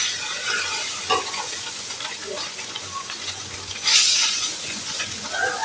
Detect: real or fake fake